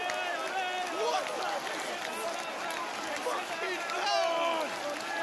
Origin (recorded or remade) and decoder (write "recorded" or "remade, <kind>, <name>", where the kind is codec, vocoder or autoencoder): recorded